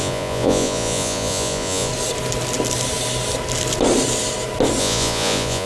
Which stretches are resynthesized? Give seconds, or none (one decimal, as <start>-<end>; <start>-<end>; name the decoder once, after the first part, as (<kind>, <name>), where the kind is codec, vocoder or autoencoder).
0.0-1.9 (vocoder, Vocos); 4.8-5.7